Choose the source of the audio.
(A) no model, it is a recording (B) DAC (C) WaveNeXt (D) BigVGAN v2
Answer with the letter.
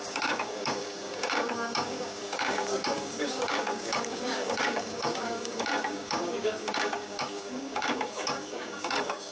B